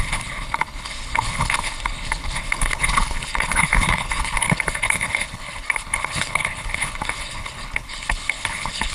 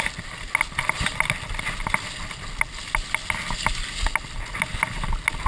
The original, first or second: second